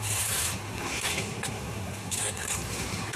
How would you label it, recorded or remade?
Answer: remade